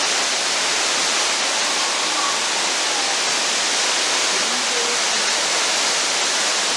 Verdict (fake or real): real